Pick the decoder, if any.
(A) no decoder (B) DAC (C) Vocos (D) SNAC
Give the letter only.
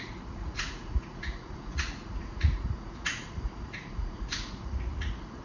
C